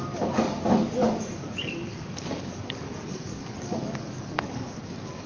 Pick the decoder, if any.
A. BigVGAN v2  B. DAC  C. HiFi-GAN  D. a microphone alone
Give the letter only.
B